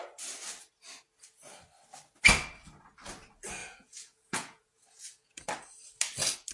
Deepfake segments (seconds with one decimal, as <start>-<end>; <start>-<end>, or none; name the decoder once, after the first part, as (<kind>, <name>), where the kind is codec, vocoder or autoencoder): 3.6-5.5 (vocoder, Vocos)